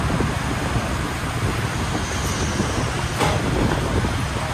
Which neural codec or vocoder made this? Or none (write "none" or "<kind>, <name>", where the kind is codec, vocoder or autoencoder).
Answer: none